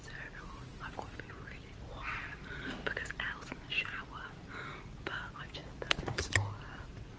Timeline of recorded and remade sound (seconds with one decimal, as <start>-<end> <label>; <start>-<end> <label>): 0.0-7.2 recorded